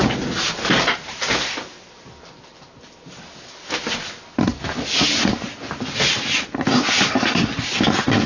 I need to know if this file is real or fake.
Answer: real